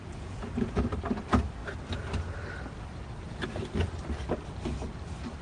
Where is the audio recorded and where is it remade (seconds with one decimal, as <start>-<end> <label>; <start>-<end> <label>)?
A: 0.0-0.8 remade; 0.8-5.4 recorded